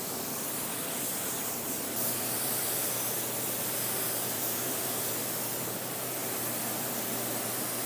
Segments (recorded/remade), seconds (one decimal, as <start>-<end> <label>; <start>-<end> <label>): 0.0-6.2 remade; 6.2-7.5 recorded; 7.5-7.9 remade